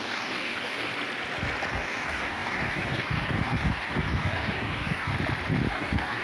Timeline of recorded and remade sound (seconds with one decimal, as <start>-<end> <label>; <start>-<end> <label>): 0.0-0.9 remade; 0.9-1.7 recorded; 1.7-5.1 remade; 5.1-5.7 recorded; 5.7-6.2 remade